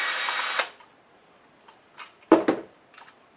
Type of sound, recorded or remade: recorded